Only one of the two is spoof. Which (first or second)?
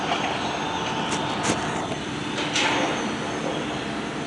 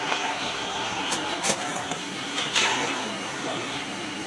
second